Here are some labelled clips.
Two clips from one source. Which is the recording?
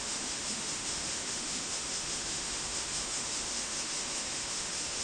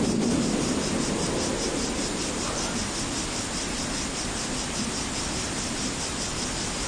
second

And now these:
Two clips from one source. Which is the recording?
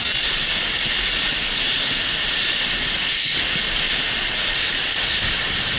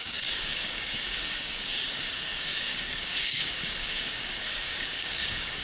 first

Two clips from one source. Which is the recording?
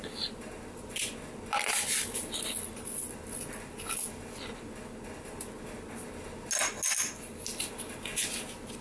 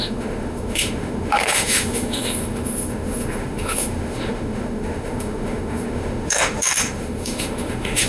first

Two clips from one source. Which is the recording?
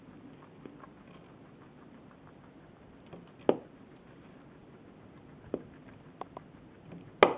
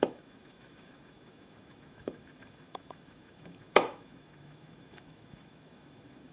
first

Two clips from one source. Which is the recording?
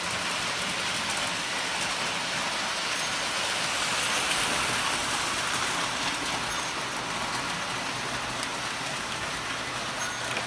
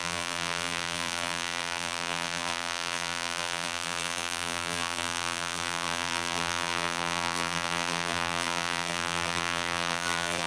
first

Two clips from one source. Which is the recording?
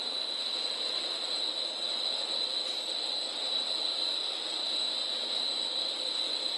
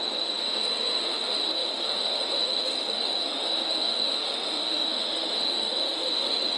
first